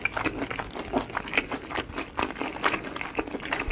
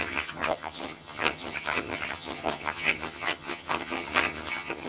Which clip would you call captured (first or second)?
first